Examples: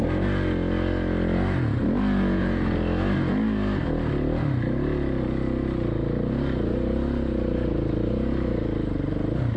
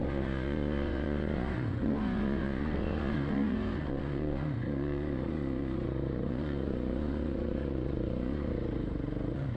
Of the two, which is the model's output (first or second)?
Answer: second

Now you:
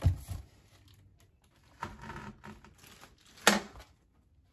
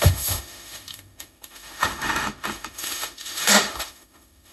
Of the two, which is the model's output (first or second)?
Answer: second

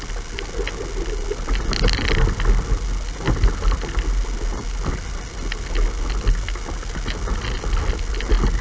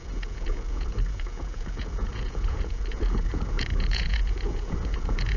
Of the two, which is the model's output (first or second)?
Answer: second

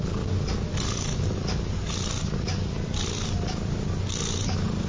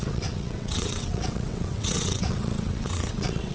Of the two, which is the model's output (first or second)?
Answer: second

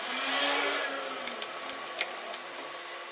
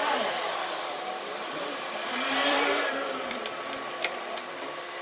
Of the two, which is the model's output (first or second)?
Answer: second